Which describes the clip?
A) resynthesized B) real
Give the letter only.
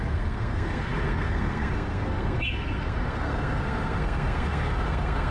A